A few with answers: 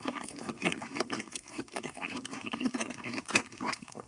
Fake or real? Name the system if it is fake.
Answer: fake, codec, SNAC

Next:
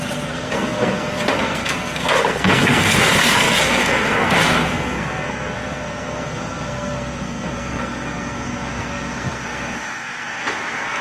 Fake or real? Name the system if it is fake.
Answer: fake, codec, SNAC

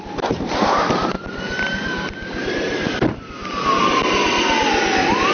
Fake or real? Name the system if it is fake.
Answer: real